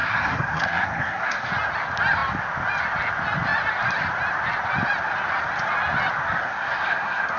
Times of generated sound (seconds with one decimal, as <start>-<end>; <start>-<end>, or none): 0.0-1.5; 6.4-7.4